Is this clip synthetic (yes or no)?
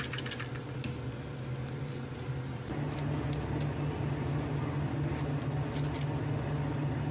no